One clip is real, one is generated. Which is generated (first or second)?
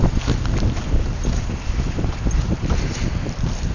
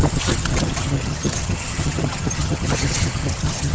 second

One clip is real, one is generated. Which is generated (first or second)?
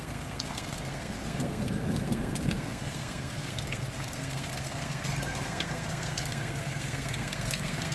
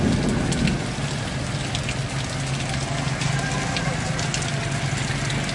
first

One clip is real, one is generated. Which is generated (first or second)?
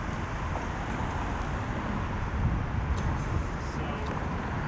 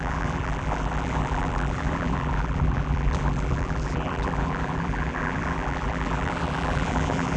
second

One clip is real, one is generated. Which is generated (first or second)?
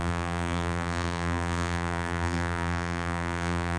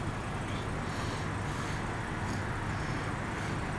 first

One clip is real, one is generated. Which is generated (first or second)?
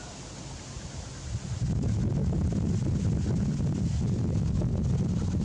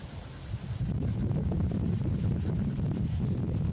second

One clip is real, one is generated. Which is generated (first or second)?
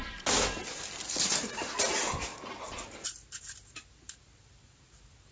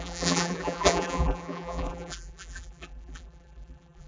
second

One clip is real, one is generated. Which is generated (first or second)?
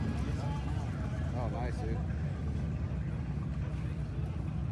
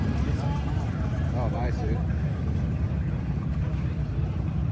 second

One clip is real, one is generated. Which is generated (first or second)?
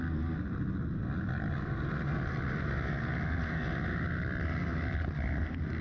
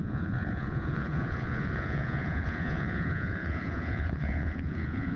second